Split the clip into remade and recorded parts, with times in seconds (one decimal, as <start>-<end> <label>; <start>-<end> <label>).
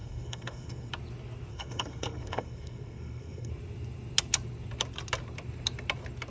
0.0-0.9 remade; 0.9-1.5 recorded; 1.5-3.5 remade; 3.5-6.3 recorded